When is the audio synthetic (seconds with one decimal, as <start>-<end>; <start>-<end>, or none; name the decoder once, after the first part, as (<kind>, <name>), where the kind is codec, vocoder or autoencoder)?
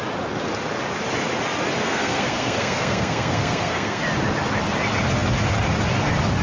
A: 1.8-4.0 (codec, SNAC)